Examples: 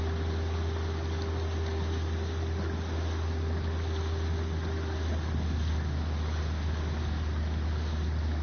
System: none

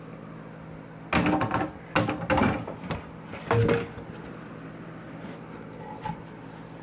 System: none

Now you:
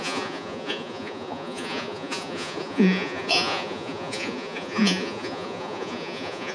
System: vocoder, Vocos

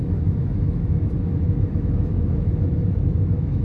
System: autoencoder, DAC-VAE